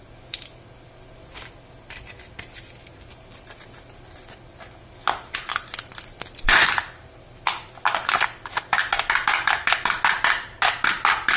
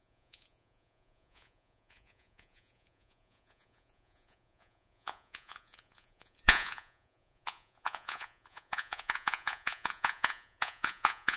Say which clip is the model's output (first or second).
second